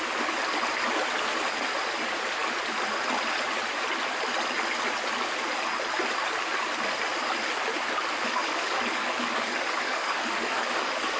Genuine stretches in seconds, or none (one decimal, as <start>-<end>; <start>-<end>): 0.0-8.4